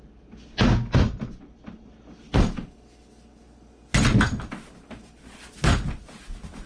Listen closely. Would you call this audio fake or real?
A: real